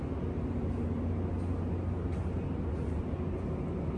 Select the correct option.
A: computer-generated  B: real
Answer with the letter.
B